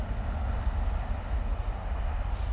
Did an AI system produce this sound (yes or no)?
no